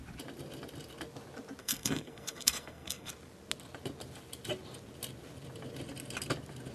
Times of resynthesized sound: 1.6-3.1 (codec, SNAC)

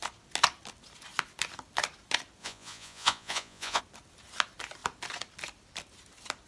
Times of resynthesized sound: 2.4-3.8 (vocoder, Vocos)

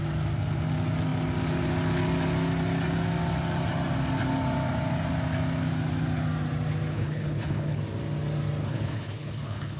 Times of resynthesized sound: 6.9-7.8 (codec, HILCodec); 8.6-9.8

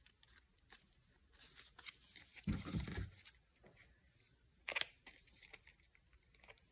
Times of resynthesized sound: 2.3-4.6 (vocoder, BigVGAN v2)

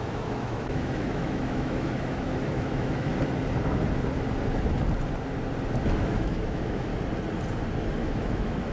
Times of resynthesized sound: 0.0-3.1 (autoencoder, DAC-VAE); 5.8-6.9; 8.0-8.7

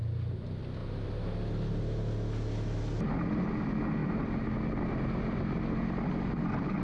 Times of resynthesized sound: none